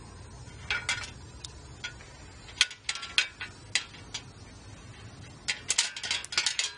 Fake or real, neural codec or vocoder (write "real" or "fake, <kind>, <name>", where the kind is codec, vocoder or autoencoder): real